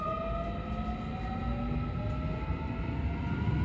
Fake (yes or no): no